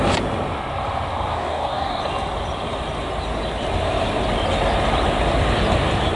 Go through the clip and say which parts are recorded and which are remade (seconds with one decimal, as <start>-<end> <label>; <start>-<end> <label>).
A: 0.0-1.3 recorded; 1.3-2.0 remade; 2.0-6.2 recorded